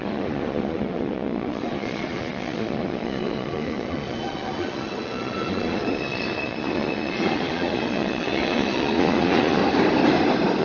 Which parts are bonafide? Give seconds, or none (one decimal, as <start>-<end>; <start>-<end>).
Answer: 9.6-10.6